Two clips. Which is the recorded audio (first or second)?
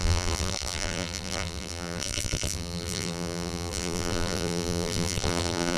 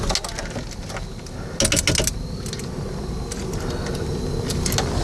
second